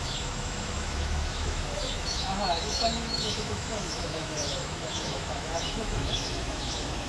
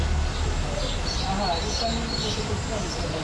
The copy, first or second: first